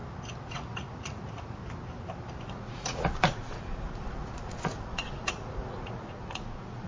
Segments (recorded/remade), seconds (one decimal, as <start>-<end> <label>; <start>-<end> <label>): 0.0-0.5 recorded; 0.5-1.6 remade; 1.6-2.4 recorded; 2.4-6.9 remade